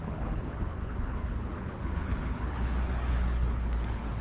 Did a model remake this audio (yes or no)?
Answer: yes